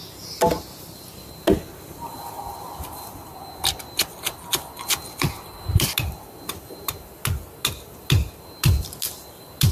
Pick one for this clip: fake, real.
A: real